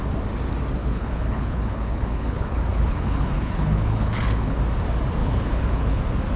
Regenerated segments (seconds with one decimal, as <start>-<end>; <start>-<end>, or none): 0.8-4.6; 5.2-6.0